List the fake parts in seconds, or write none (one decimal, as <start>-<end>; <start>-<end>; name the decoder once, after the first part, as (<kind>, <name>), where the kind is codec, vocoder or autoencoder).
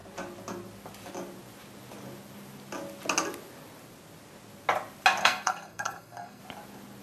5.2-6.4 (codec, SNAC)